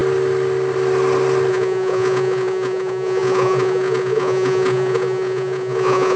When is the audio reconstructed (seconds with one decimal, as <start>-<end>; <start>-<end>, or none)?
1.5-6.2